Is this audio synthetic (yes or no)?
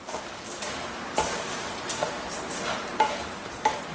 yes